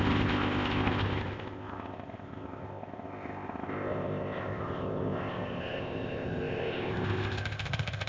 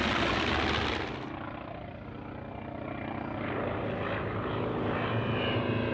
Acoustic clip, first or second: second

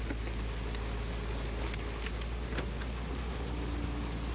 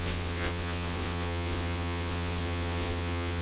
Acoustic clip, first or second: first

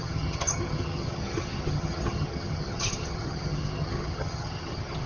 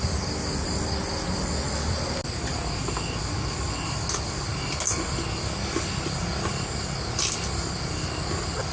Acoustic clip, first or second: second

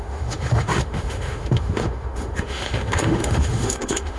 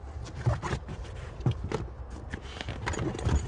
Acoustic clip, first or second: second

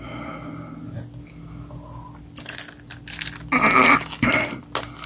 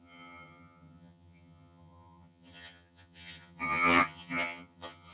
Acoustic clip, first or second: first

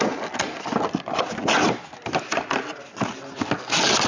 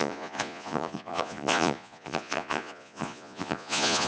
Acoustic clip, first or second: first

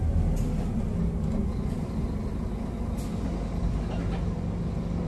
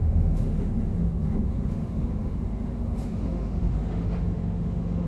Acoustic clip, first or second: first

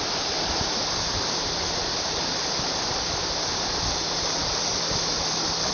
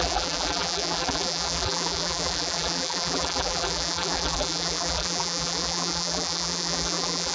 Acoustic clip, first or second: first